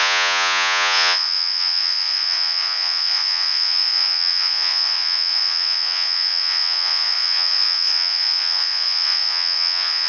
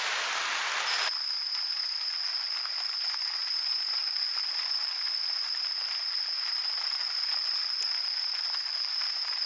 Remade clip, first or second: first